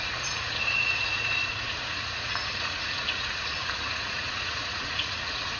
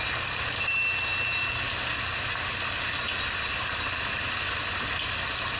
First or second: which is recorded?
second